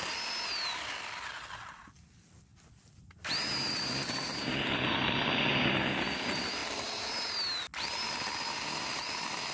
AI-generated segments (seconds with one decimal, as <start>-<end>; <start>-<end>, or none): none